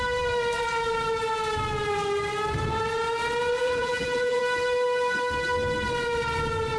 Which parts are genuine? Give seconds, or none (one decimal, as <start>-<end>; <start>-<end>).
0.0-3.6; 4.4-6.8